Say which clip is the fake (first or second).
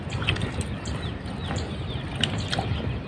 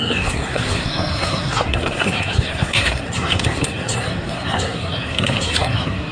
second